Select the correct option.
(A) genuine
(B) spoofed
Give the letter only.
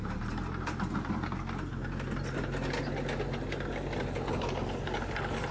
A